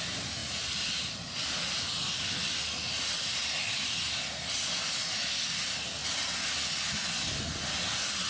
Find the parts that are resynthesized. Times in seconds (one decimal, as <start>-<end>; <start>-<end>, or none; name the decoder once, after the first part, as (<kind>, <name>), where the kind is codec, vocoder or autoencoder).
none